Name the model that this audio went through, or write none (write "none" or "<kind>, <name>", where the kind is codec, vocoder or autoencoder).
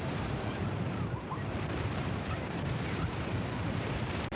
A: vocoder, BigVGAN v2